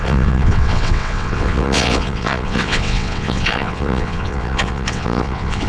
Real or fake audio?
fake